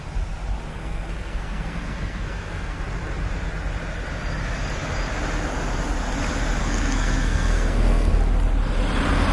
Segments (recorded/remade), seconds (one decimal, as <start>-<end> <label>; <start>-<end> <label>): 0.0-0.7 recorded; 0.7-2.8 remade; 2.8-6.6 recorded; 6.6-8.1 remade; 8.1-9.3 recorded

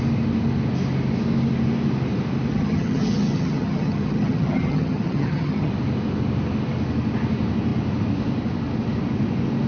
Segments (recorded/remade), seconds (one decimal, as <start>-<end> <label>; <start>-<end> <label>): 0.0-2.5 recorded; 2.5-5.7 remade; 5.7-9.7 recorded

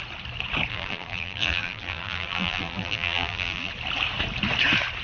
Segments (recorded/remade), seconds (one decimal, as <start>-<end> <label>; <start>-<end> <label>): 0.0-0.7 recorded; 0.7-3.7 remade; 3.7-5.0 recorded

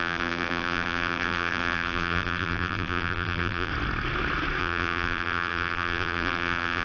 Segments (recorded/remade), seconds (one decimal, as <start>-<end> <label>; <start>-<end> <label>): 0.0-3.7 remade; 3.7-4.6 recorded; 4.6-6.8 remade

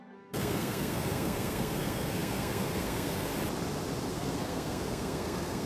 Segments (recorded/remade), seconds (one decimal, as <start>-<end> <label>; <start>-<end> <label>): 0.0-3.3 remade; 3.3-4.1 recorded; 4.1-5.7 remade

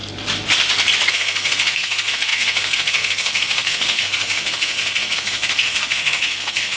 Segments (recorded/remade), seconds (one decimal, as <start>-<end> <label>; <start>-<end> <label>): 0.0-1.1 recorded; 1.1-6.8 remade

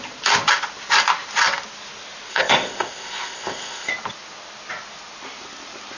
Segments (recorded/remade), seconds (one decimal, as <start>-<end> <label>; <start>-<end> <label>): 0.0-2.3 recorded; 2.3-3.9 remade; 3.9-6.0 recorded

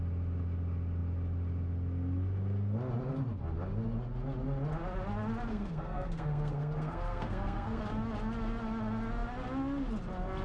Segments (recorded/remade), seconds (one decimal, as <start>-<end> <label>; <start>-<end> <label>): 0.0-5.5 recorded; 5.5-7.8 remade; 7.8-10.4 recorded